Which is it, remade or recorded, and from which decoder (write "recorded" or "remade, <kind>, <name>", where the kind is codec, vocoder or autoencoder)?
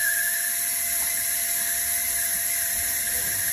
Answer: recorded